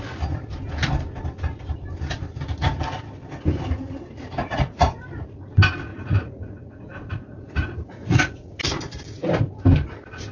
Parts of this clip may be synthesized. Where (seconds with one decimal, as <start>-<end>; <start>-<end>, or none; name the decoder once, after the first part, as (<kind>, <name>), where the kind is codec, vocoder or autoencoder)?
4.4-5.0 (vocoder, Vocos); 5.9-8.5